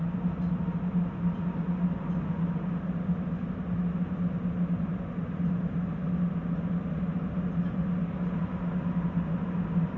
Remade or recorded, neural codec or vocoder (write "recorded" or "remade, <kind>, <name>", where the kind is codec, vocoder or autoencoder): recorded